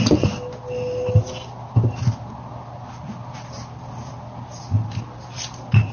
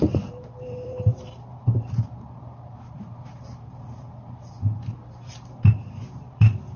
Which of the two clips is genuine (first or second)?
first